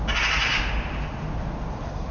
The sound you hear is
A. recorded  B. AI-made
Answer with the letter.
A